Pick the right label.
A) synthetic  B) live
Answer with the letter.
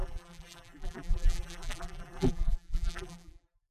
A